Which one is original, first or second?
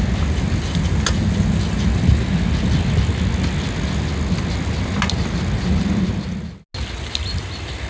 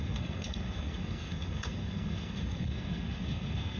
first